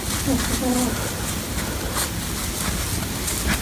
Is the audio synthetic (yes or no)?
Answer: no